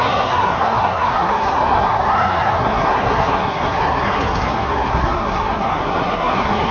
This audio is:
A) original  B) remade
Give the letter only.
B